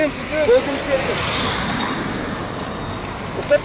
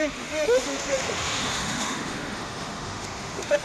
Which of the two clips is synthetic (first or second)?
second